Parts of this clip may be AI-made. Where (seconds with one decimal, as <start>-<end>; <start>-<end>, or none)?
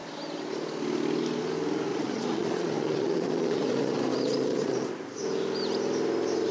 1.9-4.9